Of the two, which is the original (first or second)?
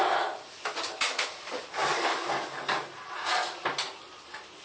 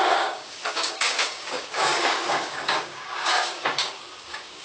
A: first